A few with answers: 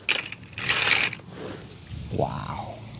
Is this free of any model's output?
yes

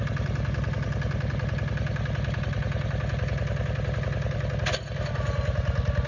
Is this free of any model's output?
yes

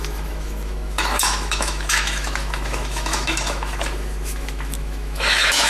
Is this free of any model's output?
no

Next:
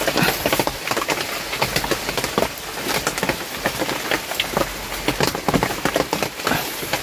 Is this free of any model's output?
yes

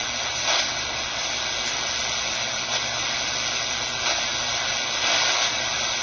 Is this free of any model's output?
yes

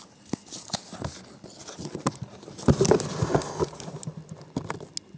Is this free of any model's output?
yes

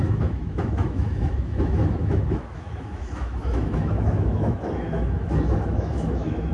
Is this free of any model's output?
no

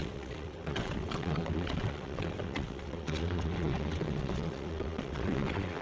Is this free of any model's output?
no